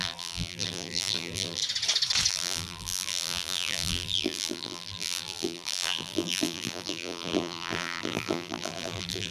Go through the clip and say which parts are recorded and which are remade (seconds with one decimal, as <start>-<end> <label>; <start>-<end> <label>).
0.0-1.6 remade; 1.6-2.3 recorded; 2.3-9.3 remade